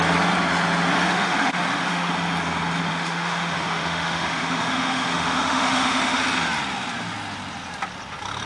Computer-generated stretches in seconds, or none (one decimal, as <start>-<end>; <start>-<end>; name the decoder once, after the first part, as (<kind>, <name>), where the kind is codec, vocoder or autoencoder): 0.9-2.1 (autoencoder, DAC-VAE); 2.9-6.2